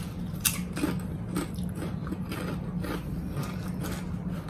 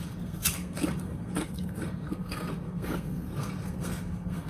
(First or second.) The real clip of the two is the first